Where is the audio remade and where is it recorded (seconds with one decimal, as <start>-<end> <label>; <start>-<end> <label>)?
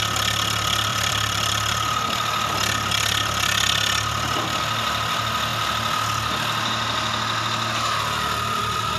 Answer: 0.0-0.9 recorded; 0.9-1.5 remade; 1.5-9.0 recorded